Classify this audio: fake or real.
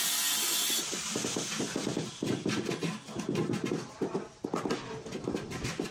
real